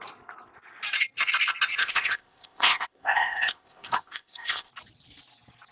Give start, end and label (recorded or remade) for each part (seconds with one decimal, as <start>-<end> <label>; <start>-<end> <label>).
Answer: 0.0-1.8 recorded; 1.8-4.7 remade; 4.7-5.7 recorded